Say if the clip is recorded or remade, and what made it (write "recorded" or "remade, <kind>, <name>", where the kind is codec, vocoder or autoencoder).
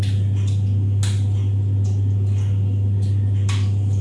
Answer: recorded